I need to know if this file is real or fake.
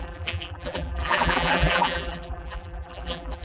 fake